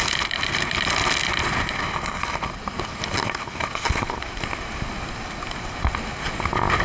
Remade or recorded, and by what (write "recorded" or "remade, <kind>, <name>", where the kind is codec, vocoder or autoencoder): recorded